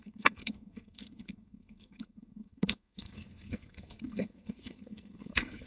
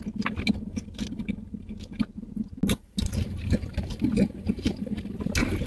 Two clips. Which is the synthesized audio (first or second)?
first